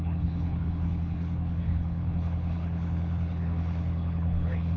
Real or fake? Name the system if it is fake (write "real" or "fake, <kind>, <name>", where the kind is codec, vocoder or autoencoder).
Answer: fake, codec, HILCodec